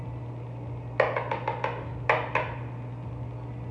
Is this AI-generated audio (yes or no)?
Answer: no